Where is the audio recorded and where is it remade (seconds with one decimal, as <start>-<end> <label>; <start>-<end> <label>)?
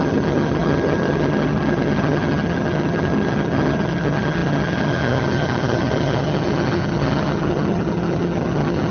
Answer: 0.0-8.9 remade